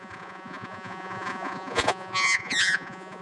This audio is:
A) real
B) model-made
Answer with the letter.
B